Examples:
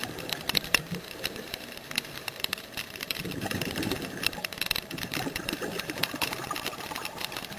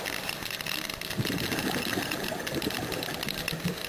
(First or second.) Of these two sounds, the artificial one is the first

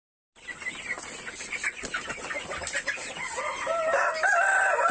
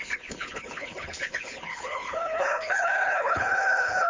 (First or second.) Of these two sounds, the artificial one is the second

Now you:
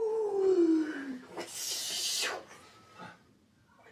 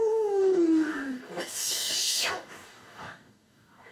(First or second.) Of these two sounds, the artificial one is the second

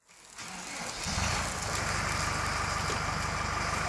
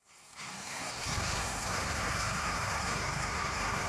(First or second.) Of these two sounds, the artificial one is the second